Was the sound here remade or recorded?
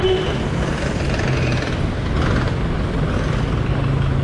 recorded